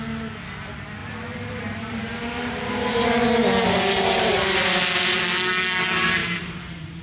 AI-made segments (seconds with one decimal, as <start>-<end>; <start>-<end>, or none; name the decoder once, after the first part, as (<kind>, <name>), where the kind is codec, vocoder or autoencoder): 1.0-5.2 (vocoder, BigVGAN v2); 6.2-7.0